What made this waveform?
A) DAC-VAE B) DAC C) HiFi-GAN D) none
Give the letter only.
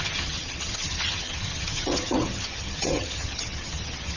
C